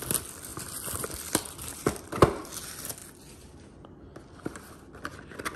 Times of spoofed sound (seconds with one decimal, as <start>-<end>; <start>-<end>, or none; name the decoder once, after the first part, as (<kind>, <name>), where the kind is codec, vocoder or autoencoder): none